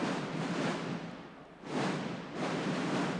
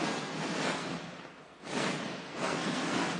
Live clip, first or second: first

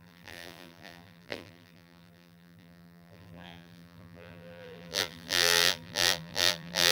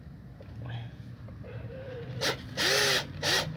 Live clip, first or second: second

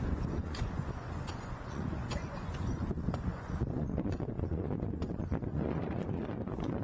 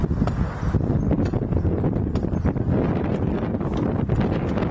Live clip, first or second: second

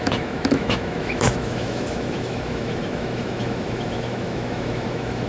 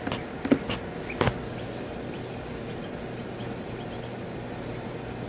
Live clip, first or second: second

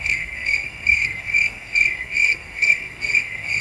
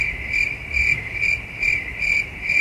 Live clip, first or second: second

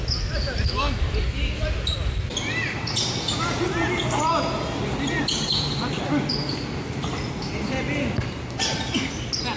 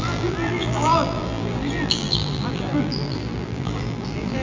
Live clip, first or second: first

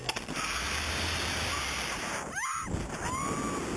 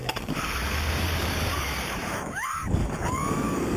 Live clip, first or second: first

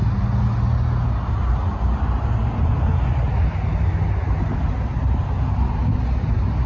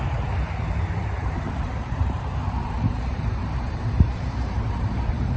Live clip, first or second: first